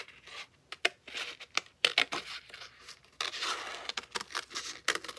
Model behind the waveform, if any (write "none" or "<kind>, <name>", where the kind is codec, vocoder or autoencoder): none